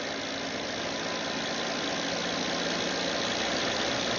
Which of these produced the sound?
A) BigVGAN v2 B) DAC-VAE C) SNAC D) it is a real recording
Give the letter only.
D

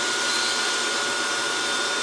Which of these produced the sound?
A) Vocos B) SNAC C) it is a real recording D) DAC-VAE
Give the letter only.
C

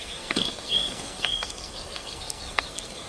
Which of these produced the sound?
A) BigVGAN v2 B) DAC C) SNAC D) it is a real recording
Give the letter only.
C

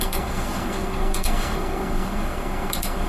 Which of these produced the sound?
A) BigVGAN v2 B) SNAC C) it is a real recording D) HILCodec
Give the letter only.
B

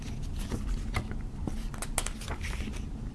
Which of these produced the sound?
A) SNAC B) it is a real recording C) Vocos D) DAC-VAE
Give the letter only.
B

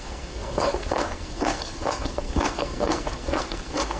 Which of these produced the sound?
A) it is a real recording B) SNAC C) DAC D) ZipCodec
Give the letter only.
B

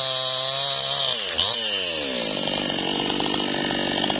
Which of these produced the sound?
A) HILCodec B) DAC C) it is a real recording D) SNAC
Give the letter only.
C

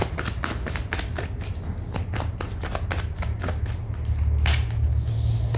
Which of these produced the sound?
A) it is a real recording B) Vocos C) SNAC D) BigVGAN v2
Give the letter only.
A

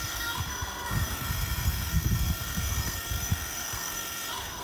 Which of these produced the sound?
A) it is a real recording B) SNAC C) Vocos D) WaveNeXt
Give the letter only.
B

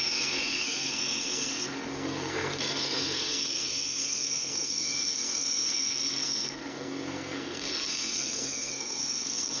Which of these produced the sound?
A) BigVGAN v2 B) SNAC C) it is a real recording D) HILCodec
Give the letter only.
B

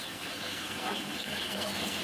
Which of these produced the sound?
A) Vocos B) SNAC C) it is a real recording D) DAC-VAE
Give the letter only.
B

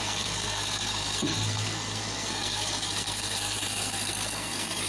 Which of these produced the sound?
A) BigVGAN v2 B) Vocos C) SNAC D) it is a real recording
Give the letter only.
C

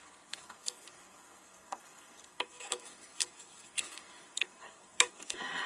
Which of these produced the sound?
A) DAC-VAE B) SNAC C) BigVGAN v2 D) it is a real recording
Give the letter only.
B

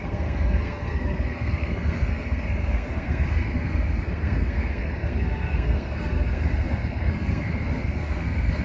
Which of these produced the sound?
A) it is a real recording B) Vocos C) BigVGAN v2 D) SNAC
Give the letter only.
D